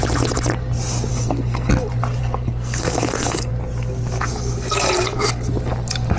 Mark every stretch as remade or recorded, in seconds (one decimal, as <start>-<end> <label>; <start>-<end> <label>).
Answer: 0.0-1.1 recorded; 1.1-1.7 remade; 1.7-2.2 recorded; 2.2-3.5 remade; 3.5-6.2 recorded